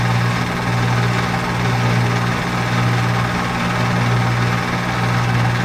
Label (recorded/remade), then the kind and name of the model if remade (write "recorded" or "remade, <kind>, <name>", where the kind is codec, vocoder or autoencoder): recorded